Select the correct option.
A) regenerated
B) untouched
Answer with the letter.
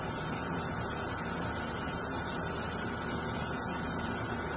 B